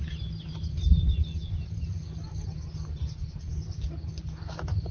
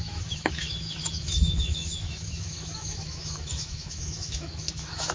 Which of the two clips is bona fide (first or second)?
first